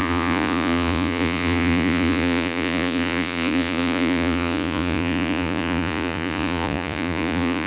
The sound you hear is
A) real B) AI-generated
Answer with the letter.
B